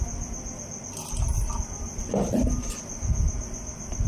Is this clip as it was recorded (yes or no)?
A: yes